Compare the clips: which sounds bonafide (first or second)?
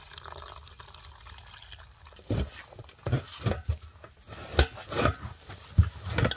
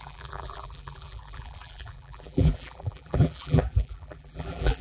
first